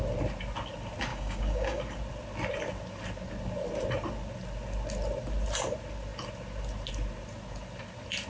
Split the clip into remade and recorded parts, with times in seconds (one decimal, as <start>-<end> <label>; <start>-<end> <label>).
0.0-1.1 recorded; 1.1-1.8 remade; 1.8-8.3 recorded